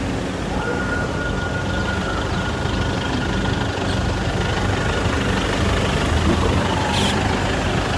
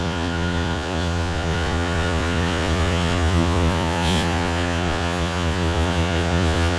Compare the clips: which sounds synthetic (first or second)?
second